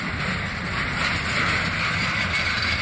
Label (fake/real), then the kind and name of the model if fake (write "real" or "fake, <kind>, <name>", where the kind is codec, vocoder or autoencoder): real